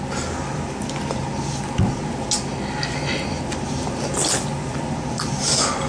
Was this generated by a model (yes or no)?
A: no